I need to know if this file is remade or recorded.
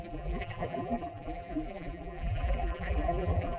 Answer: remade